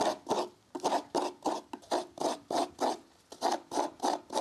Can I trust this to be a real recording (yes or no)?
yes